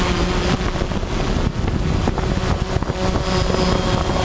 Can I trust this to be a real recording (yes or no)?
yes